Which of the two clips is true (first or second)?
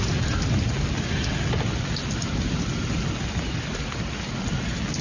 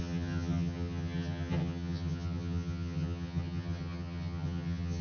first